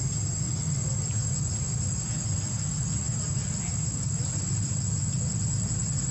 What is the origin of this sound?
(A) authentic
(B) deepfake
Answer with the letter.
A